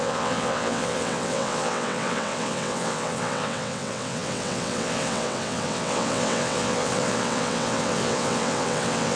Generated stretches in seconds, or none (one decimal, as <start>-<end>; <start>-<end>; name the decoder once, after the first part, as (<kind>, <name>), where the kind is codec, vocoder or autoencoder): 0.0-9.2 (vocoder, WaveNeXt)